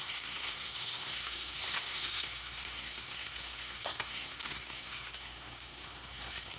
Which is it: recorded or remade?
remade